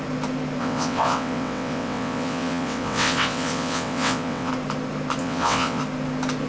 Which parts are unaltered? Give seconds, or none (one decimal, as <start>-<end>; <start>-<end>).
0.0-0.6; 4.5-5.2; 5.8-6.5